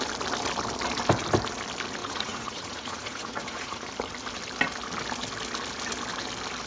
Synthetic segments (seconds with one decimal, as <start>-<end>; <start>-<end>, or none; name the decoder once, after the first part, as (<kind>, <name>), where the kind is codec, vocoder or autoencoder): 2.0-3.9 (vocoder, Vocos)